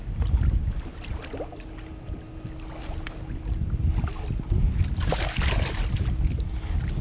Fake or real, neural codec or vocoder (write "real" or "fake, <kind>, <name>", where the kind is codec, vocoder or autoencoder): real